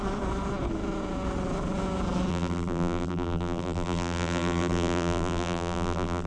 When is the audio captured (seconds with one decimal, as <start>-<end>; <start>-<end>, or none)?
0.0-2.3